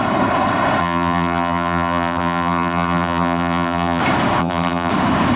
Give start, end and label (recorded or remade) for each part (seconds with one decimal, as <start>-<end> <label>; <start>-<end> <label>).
0.0-0.8 recorded; 0.8-4.0 remade; 4.0-4.4 recorded; 4.4-4.9 remade; 4.9-5.4 recorded